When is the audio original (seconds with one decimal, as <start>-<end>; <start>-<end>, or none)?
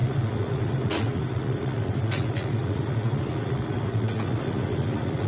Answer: none